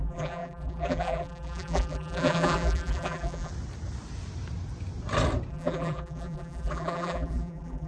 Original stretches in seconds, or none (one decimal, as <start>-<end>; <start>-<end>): 3.5-5.5